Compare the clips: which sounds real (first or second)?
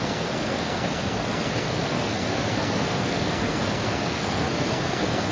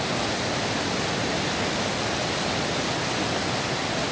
second